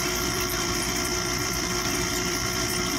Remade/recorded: remade